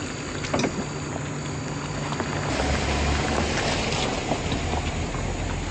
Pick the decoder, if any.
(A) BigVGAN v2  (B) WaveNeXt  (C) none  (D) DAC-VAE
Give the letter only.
C